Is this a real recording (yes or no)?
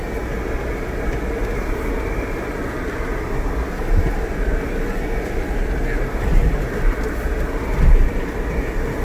yes